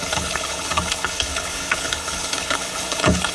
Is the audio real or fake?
fake